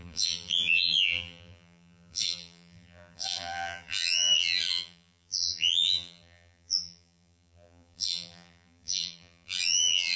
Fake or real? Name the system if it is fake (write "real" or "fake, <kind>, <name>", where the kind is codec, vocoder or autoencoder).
fake, vocoder, BigVGAN v2